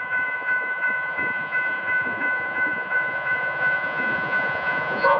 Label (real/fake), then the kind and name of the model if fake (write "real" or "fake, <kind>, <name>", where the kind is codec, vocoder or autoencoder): fake, vocoder, Vocos